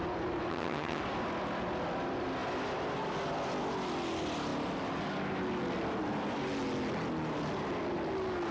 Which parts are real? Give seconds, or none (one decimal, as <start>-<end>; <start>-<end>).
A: 0.0-0.5; 1.0-8.5